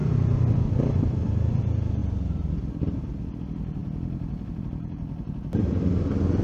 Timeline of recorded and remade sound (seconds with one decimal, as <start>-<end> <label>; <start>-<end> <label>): 0.0-1.6 remade; 1.6-2.0 recorded; 2.0-2.5 remade; 2.5-6.4 recorded